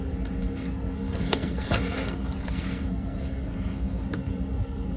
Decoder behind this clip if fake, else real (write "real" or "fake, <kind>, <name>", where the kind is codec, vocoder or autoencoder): fake, codec, SNAC